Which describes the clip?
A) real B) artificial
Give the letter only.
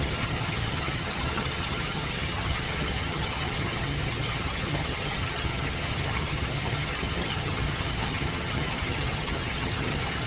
B